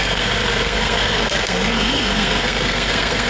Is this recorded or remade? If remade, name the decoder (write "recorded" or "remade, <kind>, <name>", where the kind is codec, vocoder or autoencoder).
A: remade, codec, SNAC